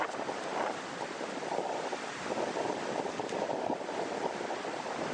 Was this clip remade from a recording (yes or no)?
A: no